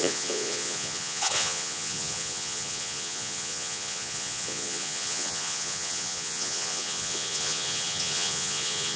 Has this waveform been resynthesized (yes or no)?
yes